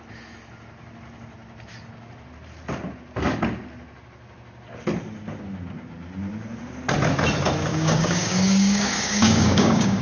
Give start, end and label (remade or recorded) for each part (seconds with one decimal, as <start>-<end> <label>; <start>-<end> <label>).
0.0-7.7 recorded; 7.7-10.0 remade